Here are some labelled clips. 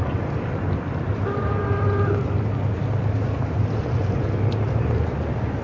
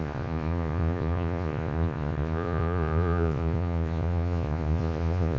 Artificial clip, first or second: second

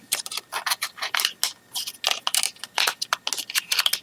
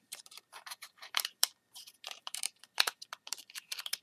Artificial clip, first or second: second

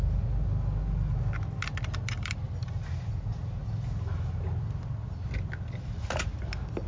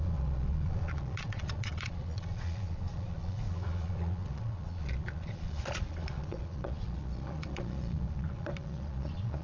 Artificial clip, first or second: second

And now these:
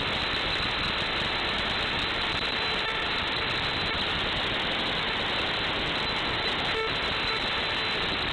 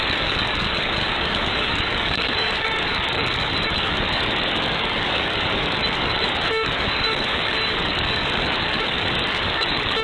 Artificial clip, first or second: second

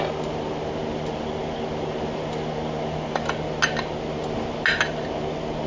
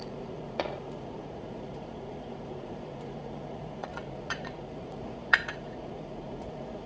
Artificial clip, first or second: second